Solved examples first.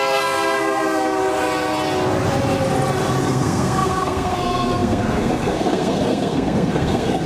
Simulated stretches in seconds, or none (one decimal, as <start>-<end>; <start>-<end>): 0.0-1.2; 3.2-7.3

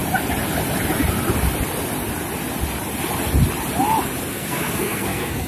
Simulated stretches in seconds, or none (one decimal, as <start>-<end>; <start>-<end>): 4.3-5.5

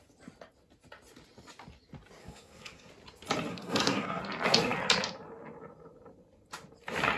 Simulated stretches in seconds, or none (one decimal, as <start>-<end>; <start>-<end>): 2.2-2.9; 3.5-4.2

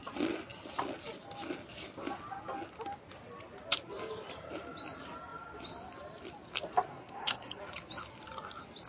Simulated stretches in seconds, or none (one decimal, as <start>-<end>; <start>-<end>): 6.9-7.6

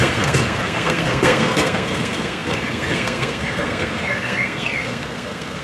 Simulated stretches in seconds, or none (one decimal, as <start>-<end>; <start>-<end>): 0.0-5.6

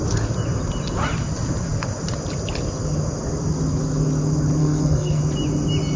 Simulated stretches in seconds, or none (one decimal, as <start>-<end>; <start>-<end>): 4.6-5.2

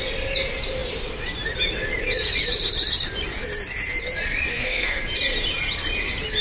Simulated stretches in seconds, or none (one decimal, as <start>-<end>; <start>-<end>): 4.5-5.0

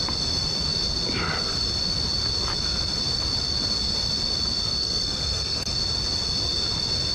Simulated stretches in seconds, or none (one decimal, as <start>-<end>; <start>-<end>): 4.8-5.7